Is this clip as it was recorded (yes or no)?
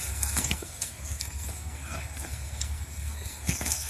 no